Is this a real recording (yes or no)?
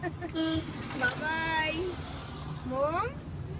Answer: yes